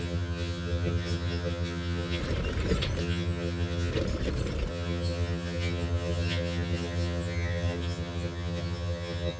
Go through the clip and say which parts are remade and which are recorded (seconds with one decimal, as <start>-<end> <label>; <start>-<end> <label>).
0.0-2.2 remade; 2.2-3.0 recorded; 3.0-3.9 remade; 3.9-4.7 recorded; 4.7-9.4 remade

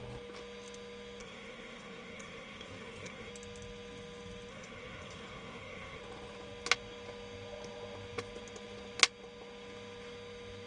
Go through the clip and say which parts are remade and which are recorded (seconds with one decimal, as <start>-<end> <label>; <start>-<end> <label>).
0.0-1.2 recorded; 1.2-3.3 remade; 3.3-4.5 recorded; 4.5-6.0 remade; 6.0-10.7 recorded

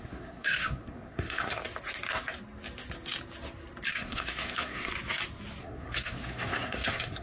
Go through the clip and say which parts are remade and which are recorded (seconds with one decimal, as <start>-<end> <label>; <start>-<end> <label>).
0.0-1.6 remade; 1.6-3.9 recorded; 3.9-4.9 remade; 4.9-5.6 recorded; 5.6-7.2 remade

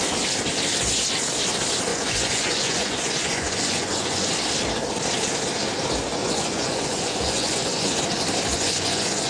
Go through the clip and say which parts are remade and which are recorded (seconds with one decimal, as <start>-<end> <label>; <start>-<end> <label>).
0.0-1.9 recorded; 1.9-4.3 remade; 4.3-6.2 recorded; 6.2-8.0 remade; 8.0-8.5 recorded; 8.5-9.3 remade

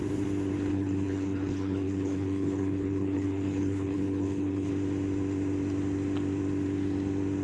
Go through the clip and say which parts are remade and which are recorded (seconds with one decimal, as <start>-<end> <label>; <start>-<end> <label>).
0.0-0.7 recorded; 0.7-4.7 remade; 4.7-7.4 recorded

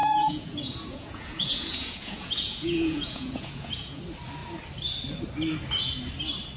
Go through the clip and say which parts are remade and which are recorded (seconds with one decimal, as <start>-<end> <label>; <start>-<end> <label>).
0.0-4.0 remade; 4.0-6.6 recorded

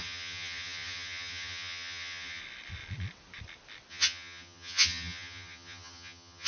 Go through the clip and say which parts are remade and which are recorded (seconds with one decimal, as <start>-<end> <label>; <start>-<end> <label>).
0.0-2.4 remade; 2.4-3.9 recorded; 3.9-6.5 remade

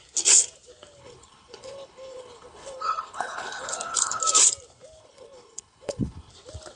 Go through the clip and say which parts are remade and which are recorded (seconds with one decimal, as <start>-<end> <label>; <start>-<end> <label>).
0.0-1.0 recorded; 1.0-4.2 remade; 4.2-5.0 recorded; 5.0-6.3 remade; 6.3-6.8 recorded